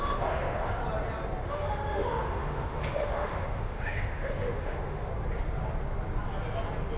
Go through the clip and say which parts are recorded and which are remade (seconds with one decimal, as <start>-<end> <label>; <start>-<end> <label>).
0.0-0.8 remade; 0.8-1.5 recorded; 1.5-5.1 remade; 5.1-7.0 recorded